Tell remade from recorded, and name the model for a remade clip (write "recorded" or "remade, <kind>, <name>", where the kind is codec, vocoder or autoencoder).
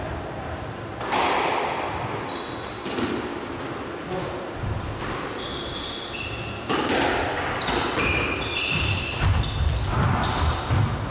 recorded